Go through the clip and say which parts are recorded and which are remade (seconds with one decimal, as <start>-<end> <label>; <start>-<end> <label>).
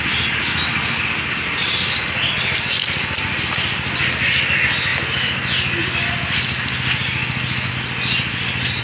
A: 0.0-8.8 recorded